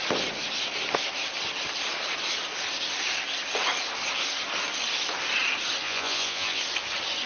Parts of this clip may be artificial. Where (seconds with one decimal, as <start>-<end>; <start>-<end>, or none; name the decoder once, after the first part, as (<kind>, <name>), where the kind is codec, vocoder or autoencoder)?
5.8-6.6 (vocoder, Vocos)